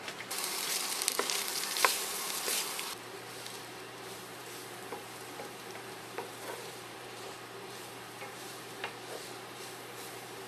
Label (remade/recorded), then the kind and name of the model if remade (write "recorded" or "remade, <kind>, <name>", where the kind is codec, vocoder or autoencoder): remade, vocoder, BigVGAN v2